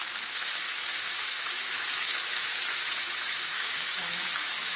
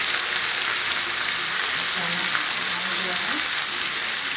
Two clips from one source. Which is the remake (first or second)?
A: first